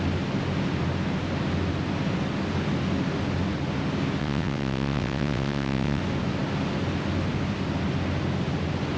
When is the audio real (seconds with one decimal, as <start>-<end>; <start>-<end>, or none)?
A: 0.0-4.2; 6.0-9.0